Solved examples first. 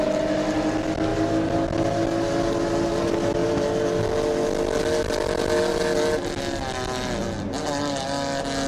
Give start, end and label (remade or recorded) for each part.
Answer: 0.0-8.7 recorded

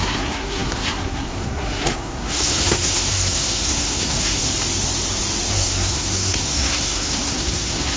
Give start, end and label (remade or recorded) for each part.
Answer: 0.0-4.5 remade; 4.5-5.5 recorded; 5.5-8.0 remade

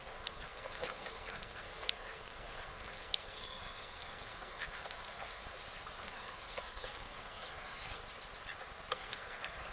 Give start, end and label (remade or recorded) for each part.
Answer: 0.0-5.4 remade; 5.4-6.0 recorded; 6.0-8.0 remade; 8.0-8.9 recorded; 8.9-9.7 remade

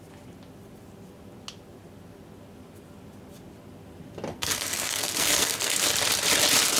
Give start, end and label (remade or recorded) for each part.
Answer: 0.0-4.3 recorded; 4.3-5.9 remade; 5.9-6.8 recorded

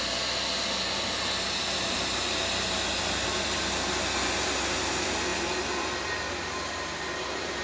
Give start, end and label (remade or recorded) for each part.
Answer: 0.0-7.6 recorded

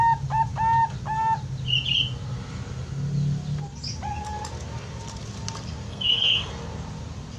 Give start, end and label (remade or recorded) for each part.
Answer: 0.0-5.9 recorded; 5.9-6.5 remade; 6.5-7.4 recorded